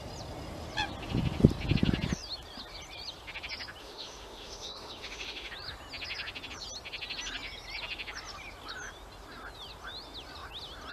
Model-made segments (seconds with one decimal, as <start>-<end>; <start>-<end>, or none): 3.8-5.5